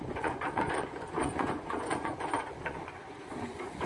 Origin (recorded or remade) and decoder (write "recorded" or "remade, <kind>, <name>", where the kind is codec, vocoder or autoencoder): remade, vocoder, Vocos